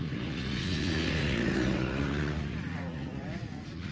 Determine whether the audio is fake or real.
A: fake